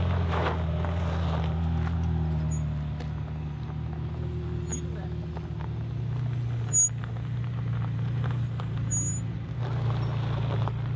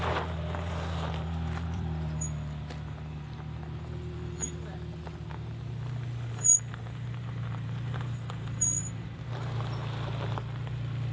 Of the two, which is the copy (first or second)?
second